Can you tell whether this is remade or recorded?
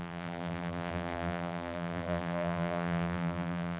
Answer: remade